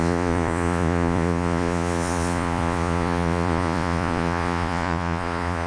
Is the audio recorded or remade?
remade